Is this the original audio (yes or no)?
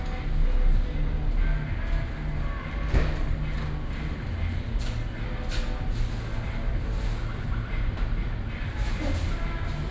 yes